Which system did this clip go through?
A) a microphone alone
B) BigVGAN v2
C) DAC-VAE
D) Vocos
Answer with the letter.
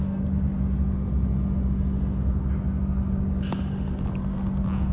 A